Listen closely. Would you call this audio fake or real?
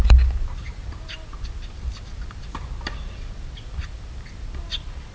real